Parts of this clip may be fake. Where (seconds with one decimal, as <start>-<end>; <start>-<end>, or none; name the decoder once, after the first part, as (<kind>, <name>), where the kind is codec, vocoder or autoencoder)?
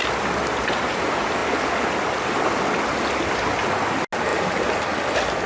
none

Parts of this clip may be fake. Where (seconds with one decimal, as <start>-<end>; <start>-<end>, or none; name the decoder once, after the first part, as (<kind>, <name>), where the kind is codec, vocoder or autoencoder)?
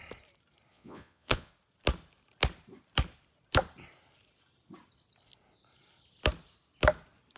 0.7-1.5 (vocoder, Vocos)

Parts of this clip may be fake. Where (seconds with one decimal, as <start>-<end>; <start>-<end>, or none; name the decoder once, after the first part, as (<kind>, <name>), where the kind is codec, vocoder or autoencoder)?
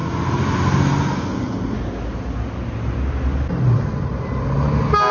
none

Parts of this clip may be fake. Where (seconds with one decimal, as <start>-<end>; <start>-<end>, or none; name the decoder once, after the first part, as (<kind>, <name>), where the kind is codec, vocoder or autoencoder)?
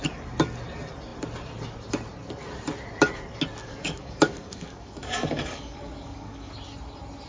3.6-6.5 (codec, DAC)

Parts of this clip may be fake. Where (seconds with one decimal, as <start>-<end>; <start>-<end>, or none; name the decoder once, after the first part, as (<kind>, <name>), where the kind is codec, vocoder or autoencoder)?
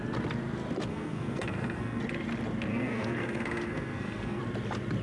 0.9-2.0 (codec, SNAC); 2.7-4.4